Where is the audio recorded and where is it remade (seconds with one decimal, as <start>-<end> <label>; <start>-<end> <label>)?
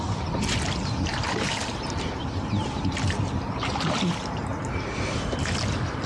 0.0-6.1 recorded